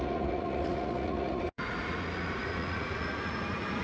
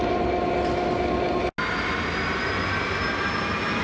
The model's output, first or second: first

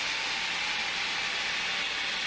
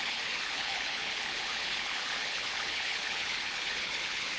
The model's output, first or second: second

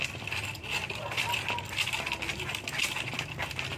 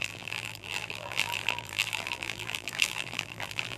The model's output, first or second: second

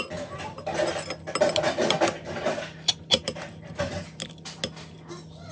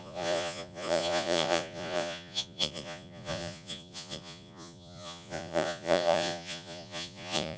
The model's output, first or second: second